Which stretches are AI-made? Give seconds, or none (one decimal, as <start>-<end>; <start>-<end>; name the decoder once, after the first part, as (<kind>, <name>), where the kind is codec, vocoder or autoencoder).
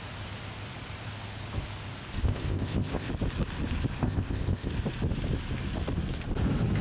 2.2-3.1 (codec, ZipCodec); 4.0-4.7